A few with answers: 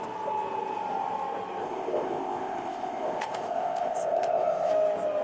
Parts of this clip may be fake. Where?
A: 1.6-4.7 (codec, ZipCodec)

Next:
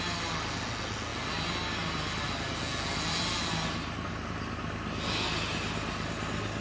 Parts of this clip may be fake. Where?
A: none

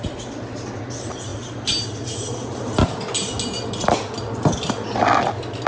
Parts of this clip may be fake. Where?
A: none